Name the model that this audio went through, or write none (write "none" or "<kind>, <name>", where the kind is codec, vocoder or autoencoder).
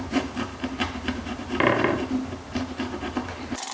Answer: vocoder, BigVGAN v2